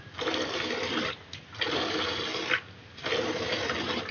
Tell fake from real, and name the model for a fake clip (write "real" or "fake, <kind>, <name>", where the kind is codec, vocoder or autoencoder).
real